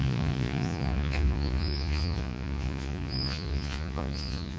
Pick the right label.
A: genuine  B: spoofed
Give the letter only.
B